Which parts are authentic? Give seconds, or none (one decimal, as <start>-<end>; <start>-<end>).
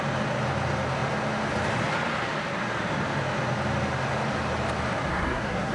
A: 0.0-5.1